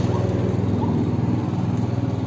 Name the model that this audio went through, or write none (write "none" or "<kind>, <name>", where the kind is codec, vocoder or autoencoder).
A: none